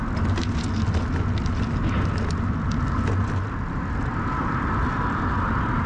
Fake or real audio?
real